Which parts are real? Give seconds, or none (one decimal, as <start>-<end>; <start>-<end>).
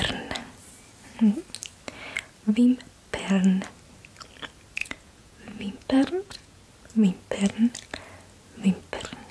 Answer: 0.0-4.8; 6.7-9.3